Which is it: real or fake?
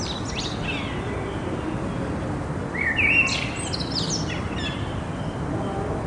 real